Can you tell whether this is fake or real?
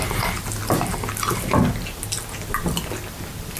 real